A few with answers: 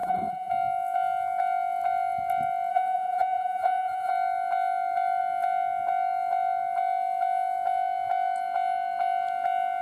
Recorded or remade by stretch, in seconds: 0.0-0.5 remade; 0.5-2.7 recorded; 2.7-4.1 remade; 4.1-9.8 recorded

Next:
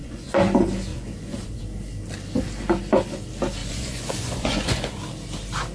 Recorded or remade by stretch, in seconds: 0.0-0.5 remade; 0.5-0.9 recorded; 0.9-1.6 remade; 1.6-3.6 recorded; 3.6-5.0 remade; 5.0-5.7 recorded